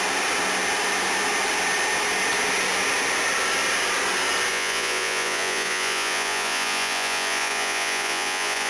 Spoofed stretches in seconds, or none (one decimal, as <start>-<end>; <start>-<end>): 4.5-8.7